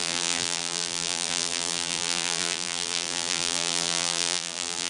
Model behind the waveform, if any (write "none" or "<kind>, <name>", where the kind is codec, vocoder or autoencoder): vocoder, BigVGAN v2